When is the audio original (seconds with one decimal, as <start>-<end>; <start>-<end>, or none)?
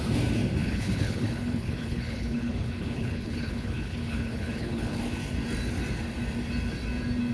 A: 0.0-0.6; 5.0-7.3